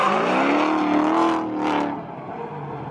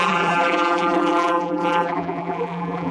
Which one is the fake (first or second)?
second